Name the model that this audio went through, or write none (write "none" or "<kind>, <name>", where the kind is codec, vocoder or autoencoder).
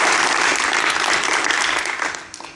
none